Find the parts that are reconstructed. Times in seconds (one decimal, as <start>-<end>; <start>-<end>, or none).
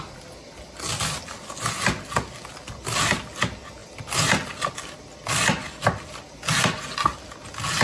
none